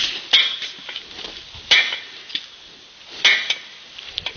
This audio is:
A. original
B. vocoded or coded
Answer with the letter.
A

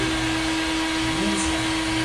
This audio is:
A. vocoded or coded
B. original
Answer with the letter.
B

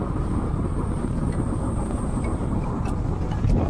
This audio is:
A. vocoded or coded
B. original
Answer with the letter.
A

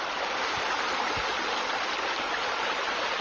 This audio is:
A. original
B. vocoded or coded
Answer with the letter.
A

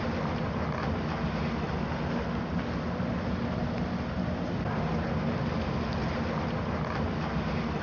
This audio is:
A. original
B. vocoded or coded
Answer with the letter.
A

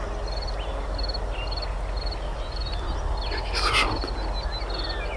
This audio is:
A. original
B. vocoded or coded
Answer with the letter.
A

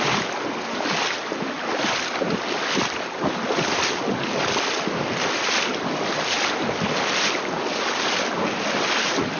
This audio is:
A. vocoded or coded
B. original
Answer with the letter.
B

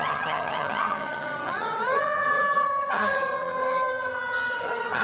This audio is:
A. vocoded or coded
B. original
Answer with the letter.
A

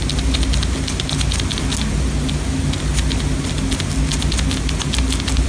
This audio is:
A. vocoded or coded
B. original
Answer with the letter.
B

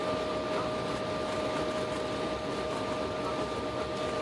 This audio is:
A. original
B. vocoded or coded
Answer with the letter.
A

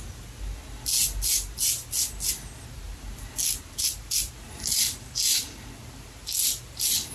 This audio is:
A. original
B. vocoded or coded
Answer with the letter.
A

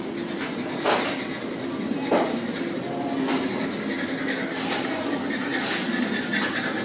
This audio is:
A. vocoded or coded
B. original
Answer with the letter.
B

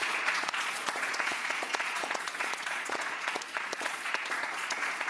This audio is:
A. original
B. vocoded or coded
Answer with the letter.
B